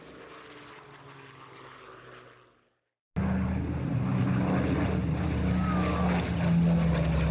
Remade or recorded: recorded